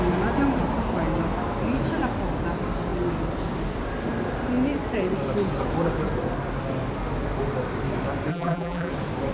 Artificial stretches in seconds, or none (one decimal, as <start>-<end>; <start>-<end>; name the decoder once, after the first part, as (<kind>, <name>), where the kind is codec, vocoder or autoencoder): 8.3-8.9 (vocoder, BigVGAN v2)